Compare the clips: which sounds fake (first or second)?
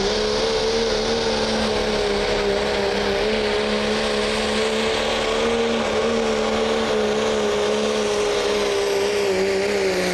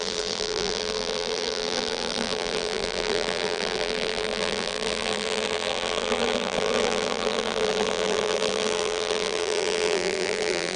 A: second